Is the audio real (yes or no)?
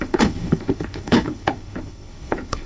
no